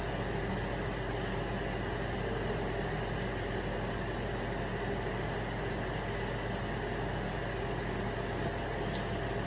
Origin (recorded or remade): recorded